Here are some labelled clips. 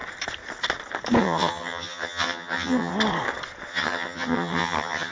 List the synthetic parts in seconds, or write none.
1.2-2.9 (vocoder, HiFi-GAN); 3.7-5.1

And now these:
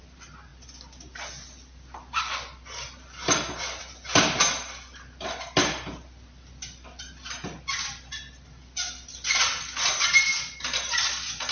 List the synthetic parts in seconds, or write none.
none

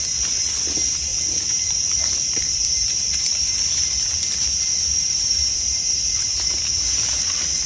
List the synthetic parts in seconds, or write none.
1.1-3.6 (vocoder, BigVGAN v2); 4.7-7.7

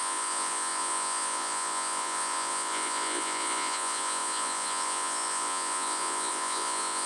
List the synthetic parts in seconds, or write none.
0.0-7.1 (vocoder, Vocos)